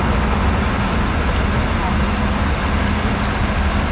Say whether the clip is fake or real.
real